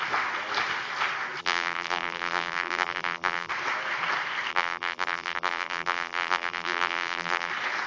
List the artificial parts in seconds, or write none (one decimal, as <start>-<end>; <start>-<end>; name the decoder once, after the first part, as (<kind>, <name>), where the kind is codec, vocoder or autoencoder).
1.4-3.5 (vocoder, BigVGAN v2); 4.5-7.5